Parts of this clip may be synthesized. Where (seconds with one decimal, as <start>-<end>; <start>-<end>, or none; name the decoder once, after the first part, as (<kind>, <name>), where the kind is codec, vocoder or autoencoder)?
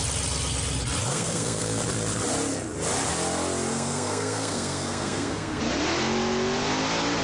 1.1-1.8 (codec, SNAC); 3.7-5.6